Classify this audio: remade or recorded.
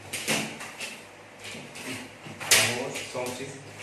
recorded